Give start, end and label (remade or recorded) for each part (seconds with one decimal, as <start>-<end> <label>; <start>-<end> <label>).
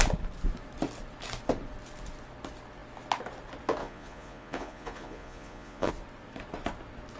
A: 0.0-3.8 recorded; 3.8-5.9 remade; 5.9-7.2 recorded